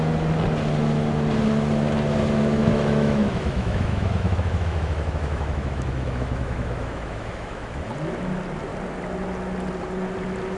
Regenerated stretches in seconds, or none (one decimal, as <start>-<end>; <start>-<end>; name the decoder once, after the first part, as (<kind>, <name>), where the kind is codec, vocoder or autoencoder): 2.6-7.9 (autoencoder, DAC-VAE)